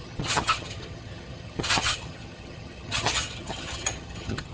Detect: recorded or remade remade